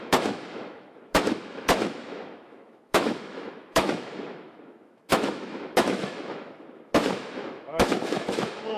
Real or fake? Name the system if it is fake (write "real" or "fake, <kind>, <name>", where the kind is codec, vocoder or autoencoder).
fake, autoencoder, DAC-VAE